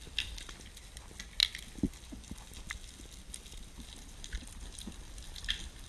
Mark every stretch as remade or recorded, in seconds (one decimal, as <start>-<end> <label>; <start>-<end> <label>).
0.0-5.9 recorded